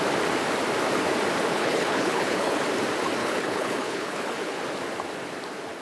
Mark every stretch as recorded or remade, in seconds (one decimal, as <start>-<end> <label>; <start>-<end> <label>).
0.0-1.5 recorded; 1.5-2.6 remade; 2.6-3.2 recorded; 3.2-4.6 remade; 4.6-5.8 recorded